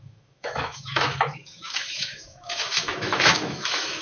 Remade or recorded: remade